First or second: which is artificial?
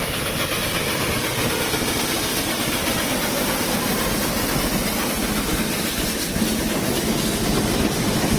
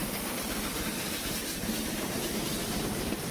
second